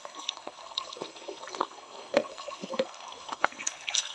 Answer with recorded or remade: remade